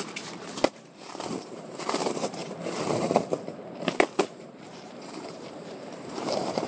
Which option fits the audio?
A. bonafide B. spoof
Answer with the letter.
B